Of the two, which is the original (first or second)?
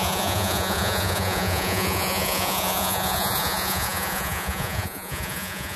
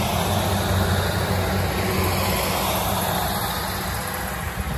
second